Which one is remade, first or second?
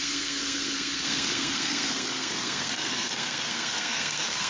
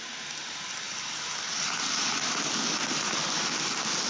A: first